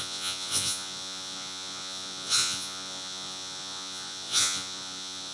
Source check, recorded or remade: remade